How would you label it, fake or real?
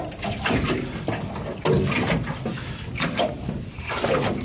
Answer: real